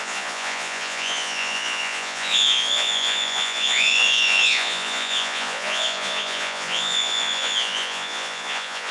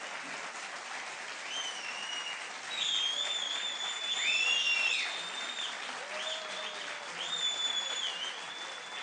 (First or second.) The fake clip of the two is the first